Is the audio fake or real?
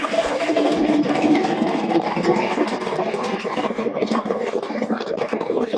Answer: fake